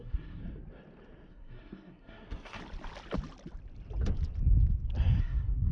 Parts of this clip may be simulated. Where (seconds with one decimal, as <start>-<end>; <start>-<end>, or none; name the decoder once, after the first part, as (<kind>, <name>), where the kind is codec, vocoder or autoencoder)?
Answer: 0.0-0.4 (codec, SNAC); 1.3-2.6; 5.2-5.7